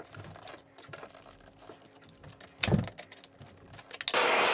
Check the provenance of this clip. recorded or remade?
recorded